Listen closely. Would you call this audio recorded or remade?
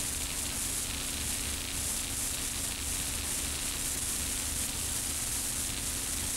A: recorded